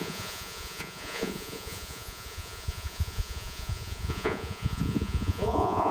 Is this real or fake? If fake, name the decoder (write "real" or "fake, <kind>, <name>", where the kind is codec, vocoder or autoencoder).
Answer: fake, vocoder, Vocos